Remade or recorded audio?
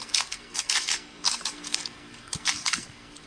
remade